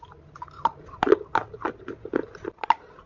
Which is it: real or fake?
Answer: real